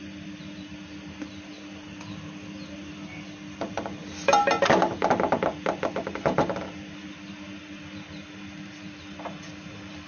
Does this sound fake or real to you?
real